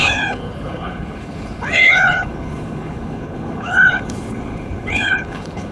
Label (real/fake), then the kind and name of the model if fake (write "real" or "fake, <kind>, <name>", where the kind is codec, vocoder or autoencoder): fake, codec, HILCodec